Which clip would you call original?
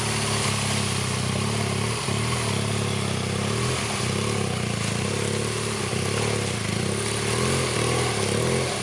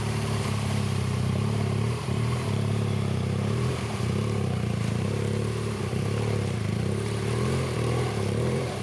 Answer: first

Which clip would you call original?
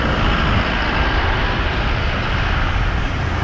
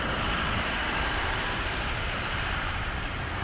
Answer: first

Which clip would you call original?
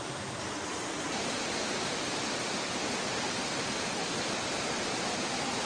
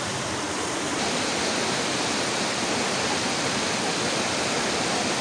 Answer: first